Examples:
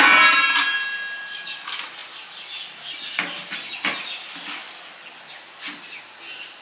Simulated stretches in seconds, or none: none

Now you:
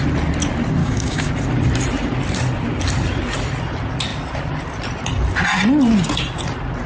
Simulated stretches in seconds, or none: 0.8-1.3 (codec, DAC)

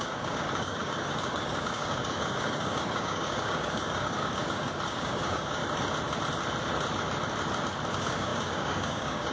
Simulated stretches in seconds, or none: 0.0-5.6 (codec, DAC); 7.9-9.3

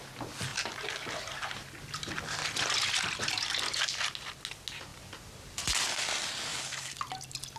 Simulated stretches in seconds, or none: 6.5-7.0 (codec, DAC)